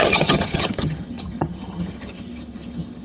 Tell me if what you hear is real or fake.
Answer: fake